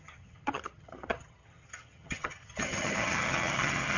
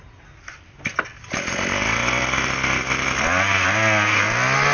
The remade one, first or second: first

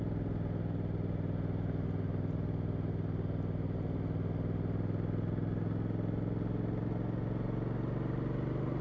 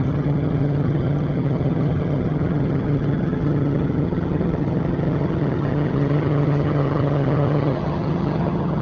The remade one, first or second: second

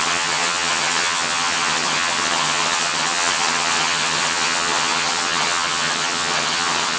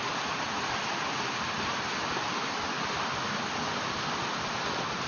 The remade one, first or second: first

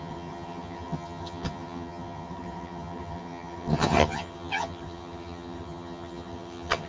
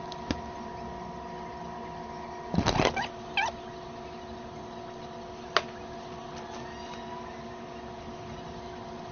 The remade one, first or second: first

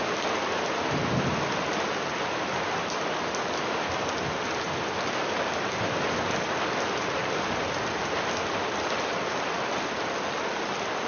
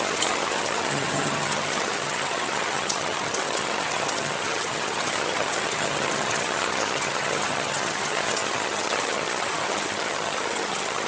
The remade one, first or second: second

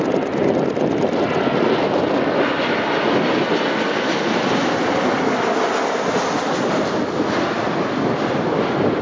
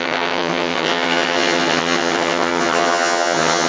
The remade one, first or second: second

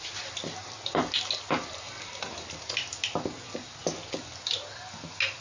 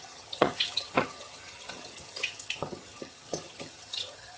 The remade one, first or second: second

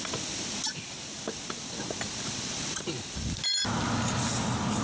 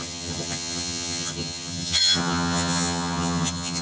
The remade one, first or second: second